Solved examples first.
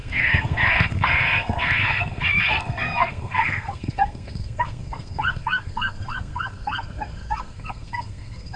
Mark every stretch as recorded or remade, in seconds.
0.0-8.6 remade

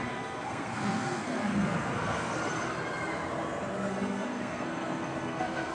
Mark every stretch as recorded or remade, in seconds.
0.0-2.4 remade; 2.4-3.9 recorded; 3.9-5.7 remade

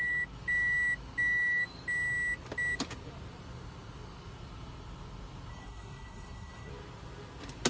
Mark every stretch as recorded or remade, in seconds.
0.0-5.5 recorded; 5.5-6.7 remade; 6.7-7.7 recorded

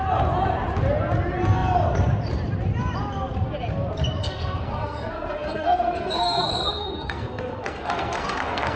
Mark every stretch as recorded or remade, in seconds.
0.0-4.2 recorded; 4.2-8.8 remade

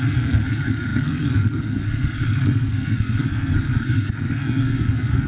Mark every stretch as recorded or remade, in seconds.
0.0-5.3 remade